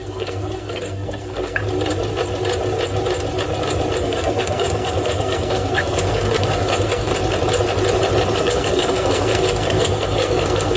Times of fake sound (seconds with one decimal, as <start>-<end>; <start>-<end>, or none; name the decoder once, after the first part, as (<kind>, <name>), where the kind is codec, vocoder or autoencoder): 0.0-1.6 (codec, SNAC); 4.0-7.1; 8.4-10.8

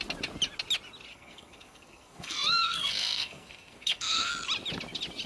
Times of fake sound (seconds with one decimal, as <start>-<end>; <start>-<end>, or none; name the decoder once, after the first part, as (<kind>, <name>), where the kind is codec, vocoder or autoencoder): 1.1-4.3 (codec, SNAC)

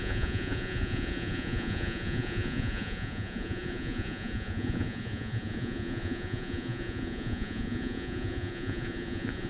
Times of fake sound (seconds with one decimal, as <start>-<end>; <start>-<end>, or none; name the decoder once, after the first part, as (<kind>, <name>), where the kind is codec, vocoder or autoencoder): 0.0-9.5 (vocoder, Vocos)

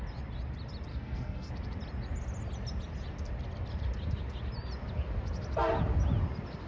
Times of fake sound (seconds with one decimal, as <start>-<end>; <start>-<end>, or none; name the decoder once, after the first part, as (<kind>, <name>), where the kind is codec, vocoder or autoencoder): 0.9-1.5 (codec, SNAC)